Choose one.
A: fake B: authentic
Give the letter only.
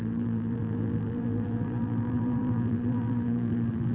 A